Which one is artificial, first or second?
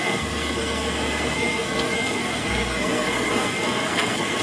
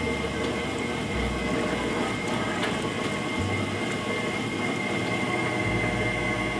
first